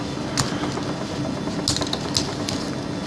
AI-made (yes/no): no